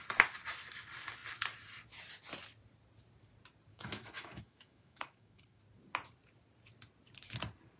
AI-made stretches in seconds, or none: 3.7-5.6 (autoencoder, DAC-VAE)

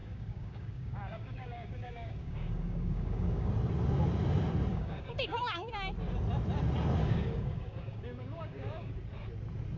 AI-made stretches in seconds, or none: 0.0-3.5 (codec, DAC); 4.7-5.7; 7.0-8.9

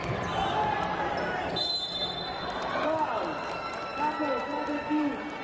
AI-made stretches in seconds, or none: none

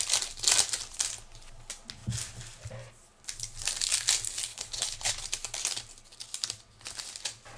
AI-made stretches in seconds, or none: 4.5-5.1 (codec, HILCodec)

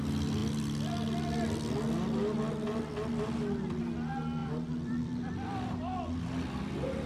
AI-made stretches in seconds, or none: 4.4-5.8 (vocoder, BigVGAN v2)

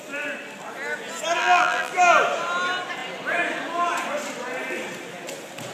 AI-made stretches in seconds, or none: 1.4-1.9 (vocoder, BigVGAN v2)

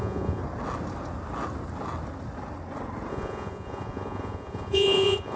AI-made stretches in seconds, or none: 0.0-0.4 (vocoder, Vocos); 3.1-5.4

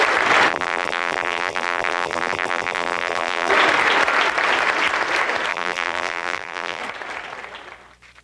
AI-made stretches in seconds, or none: 0.5-3.5 (vocoder, BigVGAN v2); 5.5-6.8